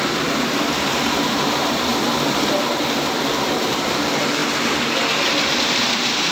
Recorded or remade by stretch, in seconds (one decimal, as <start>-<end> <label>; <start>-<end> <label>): 0.0-1.9 remade; 1.9-2.7 recorded; 2.7-4.4 remade; 4.4-5.7 recorded; 5.7-6.3 remade